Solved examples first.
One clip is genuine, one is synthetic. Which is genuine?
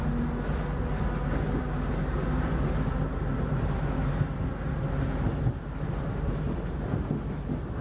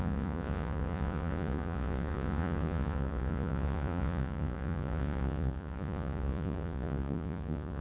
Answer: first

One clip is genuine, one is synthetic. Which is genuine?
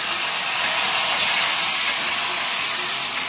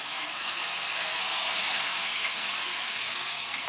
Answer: first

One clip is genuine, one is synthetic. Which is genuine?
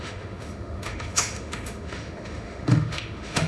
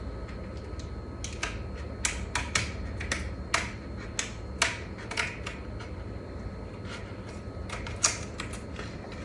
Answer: second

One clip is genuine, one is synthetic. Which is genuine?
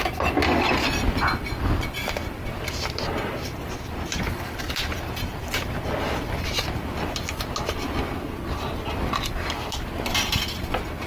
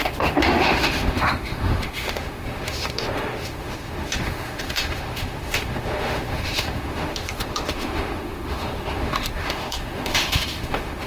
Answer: first